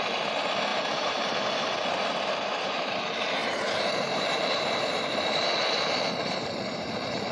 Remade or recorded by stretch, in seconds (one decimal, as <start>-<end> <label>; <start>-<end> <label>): 0.0-0.7 recorded; 0.7-3.0 remade; 3.0-3.4 recorded; 3.4-7.3 remade